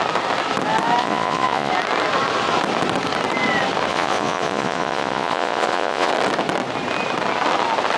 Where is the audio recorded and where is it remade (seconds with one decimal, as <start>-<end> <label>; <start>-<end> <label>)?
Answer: 0.0-1.0 recorded; 1.0-1.7 remade; 1.7-3.9 recorded; 3.9-6.1 remade; 6.1-8.0 recorded